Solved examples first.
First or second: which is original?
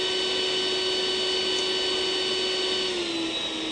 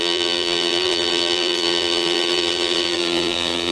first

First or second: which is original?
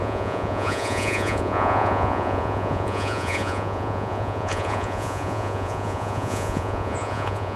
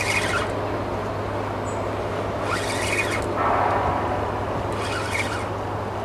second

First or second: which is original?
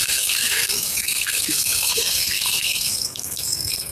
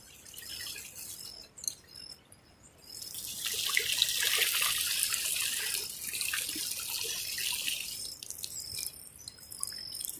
second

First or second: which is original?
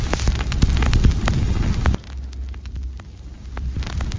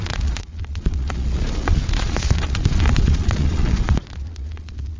first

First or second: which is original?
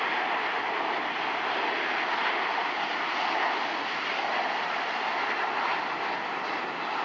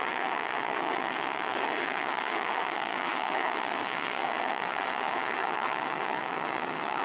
first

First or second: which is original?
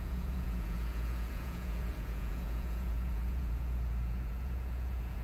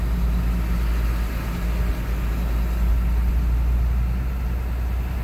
second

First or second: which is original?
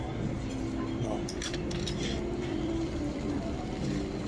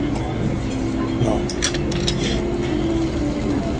second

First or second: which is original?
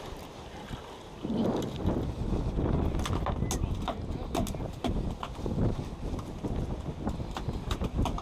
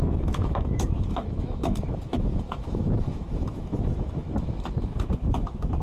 first